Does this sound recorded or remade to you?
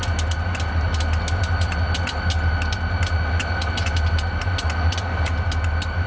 recorded